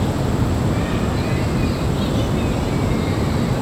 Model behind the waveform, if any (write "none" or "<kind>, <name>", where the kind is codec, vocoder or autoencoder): none